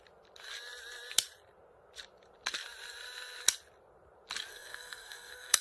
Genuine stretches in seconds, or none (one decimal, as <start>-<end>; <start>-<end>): 0.0-4.5